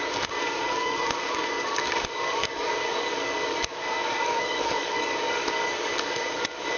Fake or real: fake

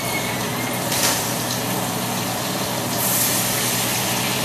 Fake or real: fake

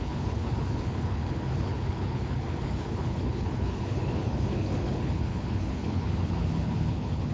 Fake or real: fake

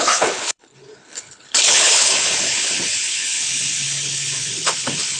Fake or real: fake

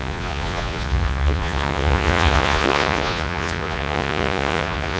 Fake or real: fake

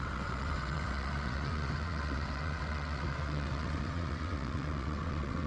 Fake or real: fake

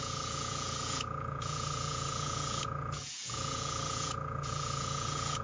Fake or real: fake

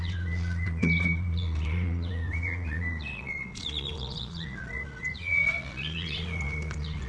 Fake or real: fake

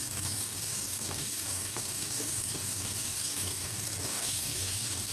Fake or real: fake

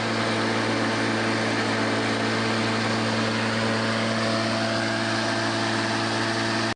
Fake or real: real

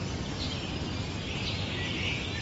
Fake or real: real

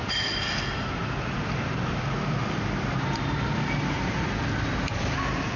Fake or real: fake